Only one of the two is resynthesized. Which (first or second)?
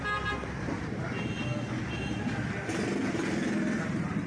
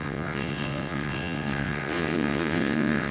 second